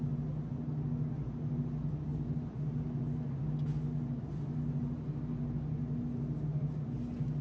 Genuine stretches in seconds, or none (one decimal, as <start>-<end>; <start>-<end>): 0.0-7.4